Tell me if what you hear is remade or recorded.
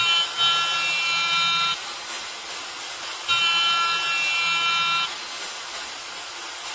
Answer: recorded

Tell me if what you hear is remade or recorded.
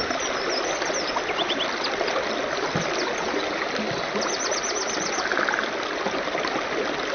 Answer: recorded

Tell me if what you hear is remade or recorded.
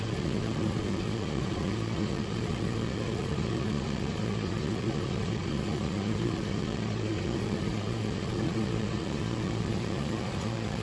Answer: remade